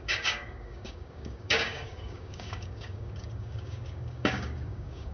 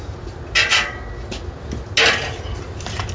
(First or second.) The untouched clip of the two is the second